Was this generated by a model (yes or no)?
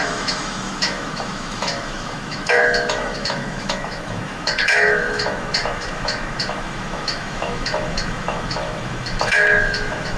yes